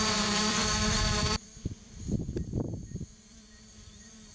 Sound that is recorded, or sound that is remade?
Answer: remade